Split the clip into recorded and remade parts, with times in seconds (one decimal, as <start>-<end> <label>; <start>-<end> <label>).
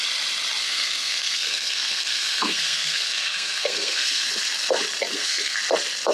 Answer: 0.0-0.6 recorded; 0.6-4.3 remade; 4.3-5.1 recorded; 5.1-5.6 remade; 5.6-6.1 recorded